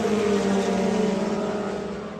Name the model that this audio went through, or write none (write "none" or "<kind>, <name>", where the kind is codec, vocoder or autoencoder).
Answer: none